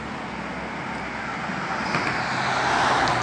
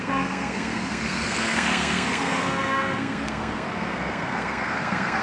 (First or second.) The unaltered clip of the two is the first